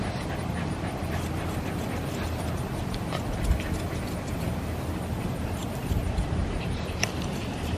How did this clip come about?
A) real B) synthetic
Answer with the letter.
B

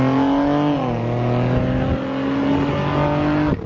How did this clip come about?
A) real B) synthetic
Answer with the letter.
A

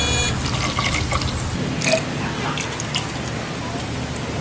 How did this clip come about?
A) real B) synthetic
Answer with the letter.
A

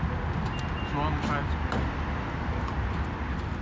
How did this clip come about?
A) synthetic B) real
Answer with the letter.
B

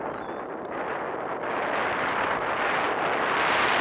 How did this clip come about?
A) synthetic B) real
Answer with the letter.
B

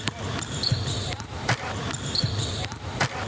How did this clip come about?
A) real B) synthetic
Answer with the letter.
B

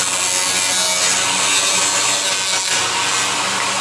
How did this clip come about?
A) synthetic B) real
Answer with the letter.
B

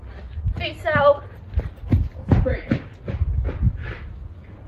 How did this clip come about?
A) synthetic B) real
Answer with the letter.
B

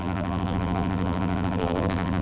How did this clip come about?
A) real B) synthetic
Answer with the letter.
B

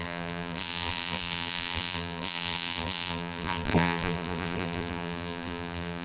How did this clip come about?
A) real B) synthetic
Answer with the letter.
B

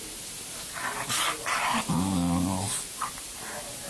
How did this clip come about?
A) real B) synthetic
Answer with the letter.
A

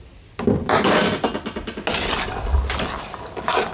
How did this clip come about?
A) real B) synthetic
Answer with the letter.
A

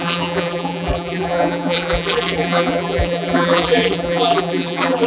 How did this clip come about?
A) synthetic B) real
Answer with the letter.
A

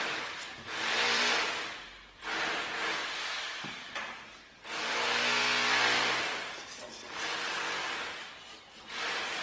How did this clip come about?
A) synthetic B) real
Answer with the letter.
A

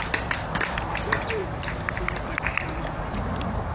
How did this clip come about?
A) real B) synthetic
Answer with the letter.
B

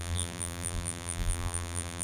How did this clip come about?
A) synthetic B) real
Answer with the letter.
A